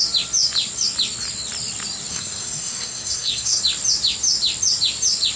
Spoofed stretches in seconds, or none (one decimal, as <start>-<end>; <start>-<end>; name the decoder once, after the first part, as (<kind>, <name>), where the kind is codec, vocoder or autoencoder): 2.1-3.6 (codec, SNAC)